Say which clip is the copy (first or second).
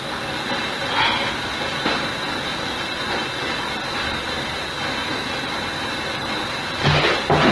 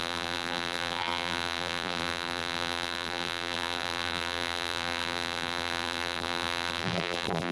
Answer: second